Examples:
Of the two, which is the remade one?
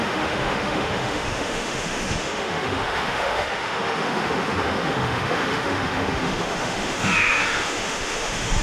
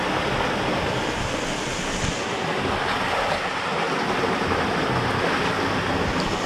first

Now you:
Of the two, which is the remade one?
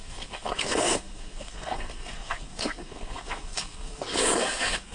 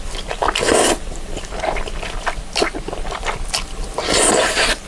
first